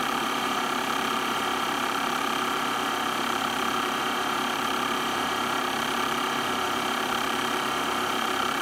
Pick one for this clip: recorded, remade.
remade